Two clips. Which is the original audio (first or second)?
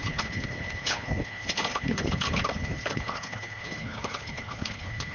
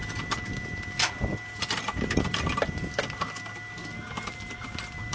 second